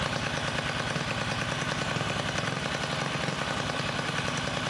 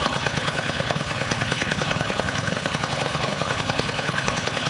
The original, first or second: first